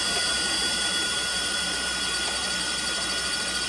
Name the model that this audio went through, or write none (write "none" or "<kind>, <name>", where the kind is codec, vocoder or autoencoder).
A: vocoder, BigVGAN v2